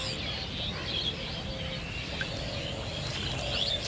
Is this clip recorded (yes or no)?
yes